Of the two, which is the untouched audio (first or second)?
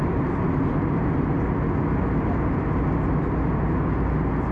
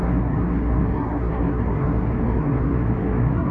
first